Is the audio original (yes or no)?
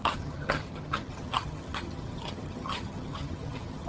no